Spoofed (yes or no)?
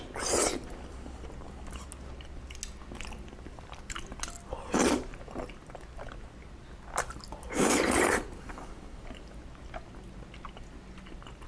no